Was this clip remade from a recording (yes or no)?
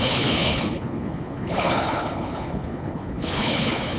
yes